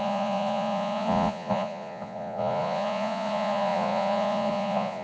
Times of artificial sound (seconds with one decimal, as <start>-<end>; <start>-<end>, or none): 0.0-5.0